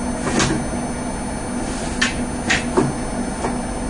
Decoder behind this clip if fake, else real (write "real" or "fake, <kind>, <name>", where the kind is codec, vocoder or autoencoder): real